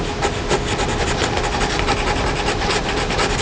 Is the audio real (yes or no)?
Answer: yes